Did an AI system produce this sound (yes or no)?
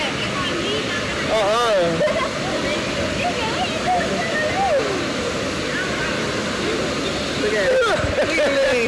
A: no